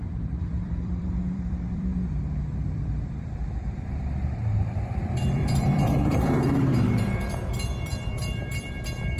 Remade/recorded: remade